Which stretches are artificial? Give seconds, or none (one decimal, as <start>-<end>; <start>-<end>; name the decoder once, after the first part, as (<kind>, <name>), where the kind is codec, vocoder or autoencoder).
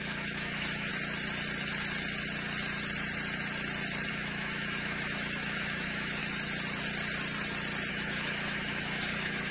0.0-0.9 (autoencoder, DAC-VAE); 4.1-6.2; 7.9-9.5